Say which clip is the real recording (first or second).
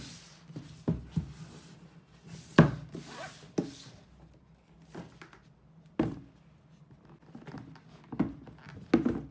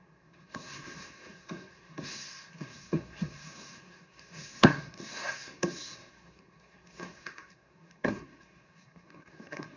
first